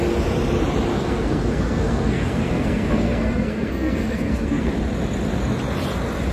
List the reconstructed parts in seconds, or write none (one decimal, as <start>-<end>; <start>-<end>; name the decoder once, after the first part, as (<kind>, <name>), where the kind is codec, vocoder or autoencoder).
0.9-4.7 (codec, SNAC)